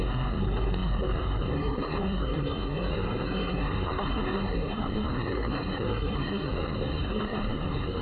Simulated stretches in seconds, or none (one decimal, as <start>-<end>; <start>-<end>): 0.0-8.0